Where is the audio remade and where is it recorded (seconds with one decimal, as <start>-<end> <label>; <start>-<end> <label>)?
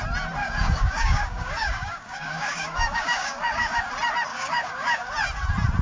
0.0-0.4 recorded; 0.4-3.9 remade; 3.9-4.3 recorded; 4.3-5.1 remade; 5.1-5.8 recorded